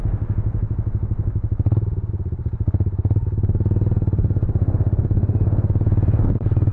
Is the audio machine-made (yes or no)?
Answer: no